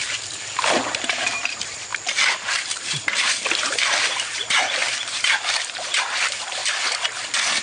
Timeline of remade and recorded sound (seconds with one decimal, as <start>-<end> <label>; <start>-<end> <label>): 0.0-6.6 remade; 6.6-7.6 recorded